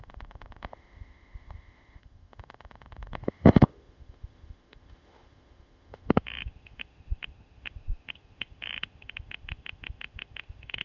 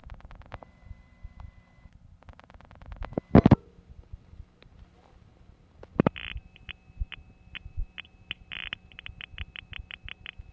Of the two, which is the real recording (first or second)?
second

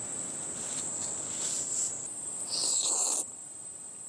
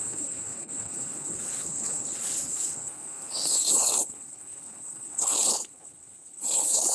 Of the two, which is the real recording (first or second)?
first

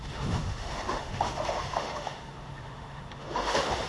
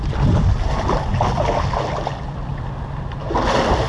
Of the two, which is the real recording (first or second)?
second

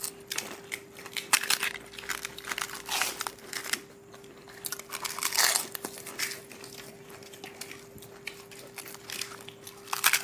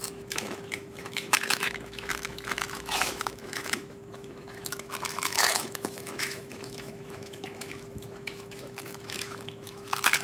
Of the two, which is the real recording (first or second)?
first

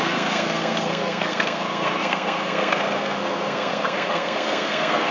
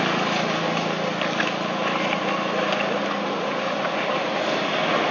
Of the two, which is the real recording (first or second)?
second